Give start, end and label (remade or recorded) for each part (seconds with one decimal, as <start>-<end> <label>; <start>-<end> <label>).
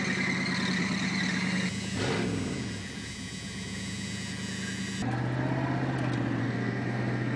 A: 0.0-6.4 recorded; 6.4-7.4 remade